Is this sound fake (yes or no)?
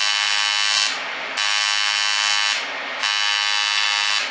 no